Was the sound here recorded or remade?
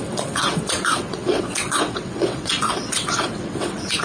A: remade